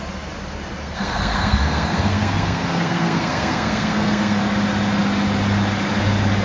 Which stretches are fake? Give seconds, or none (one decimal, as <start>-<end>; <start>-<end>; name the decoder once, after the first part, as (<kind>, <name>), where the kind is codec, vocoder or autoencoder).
0.8-4.4 (codec, SNAC)